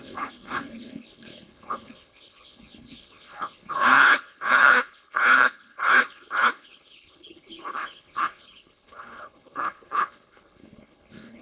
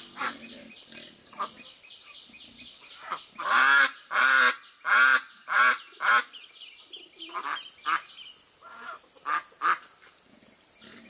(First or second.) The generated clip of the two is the first